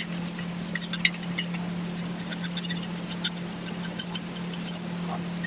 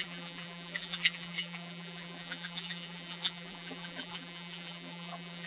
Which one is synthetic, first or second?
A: second